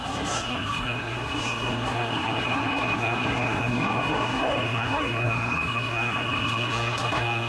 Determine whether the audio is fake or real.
fake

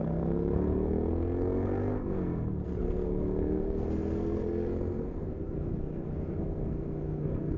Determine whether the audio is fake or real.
fake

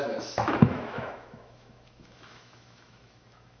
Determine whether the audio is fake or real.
fake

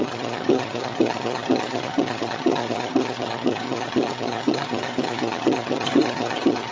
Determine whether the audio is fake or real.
fake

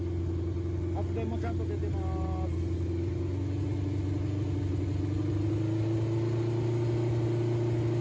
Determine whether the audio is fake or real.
real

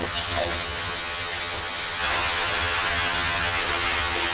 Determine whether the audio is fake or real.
fake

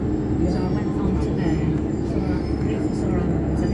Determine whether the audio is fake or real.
real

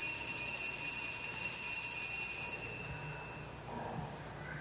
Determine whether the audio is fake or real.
real